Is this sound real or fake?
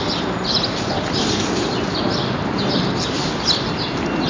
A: real